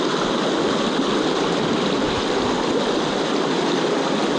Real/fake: real